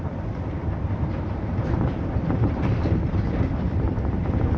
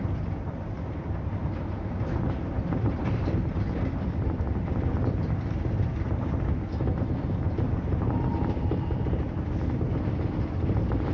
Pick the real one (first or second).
second